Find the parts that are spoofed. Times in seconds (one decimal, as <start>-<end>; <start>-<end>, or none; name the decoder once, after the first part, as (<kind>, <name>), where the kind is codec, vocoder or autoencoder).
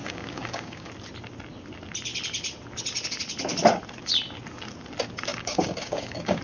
0.0-0.9 (codec, DAC); 5.3-6.4